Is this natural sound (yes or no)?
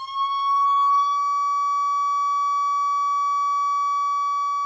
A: yes